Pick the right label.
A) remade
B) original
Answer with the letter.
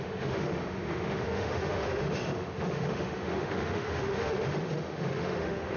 A